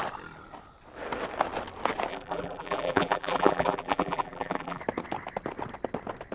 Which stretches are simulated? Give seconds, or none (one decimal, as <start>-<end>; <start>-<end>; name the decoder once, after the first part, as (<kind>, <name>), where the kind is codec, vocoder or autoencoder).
2.1-4.8 (vocoder, BigVGAN v2)